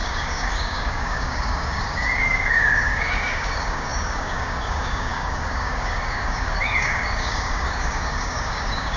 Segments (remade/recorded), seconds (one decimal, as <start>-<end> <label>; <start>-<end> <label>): 0.0-9.0 remade